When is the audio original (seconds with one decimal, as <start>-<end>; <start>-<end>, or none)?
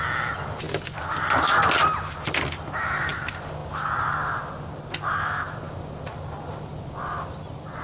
0.0-7.8